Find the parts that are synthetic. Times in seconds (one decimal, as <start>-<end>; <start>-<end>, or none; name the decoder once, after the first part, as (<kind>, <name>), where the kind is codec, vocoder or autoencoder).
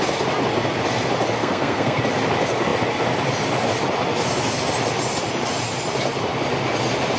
1.4-2.0 (codec, SNAC)